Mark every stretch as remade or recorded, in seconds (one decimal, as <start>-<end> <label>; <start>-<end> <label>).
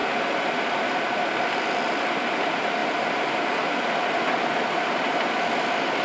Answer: 0.0-6.0 recorded